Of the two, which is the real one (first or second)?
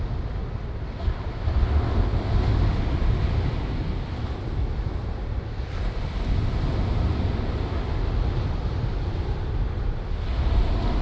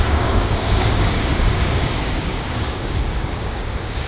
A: first